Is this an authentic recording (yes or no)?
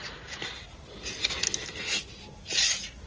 yes